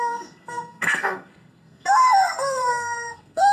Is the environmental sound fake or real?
fake